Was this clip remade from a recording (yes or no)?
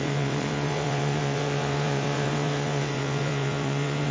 yes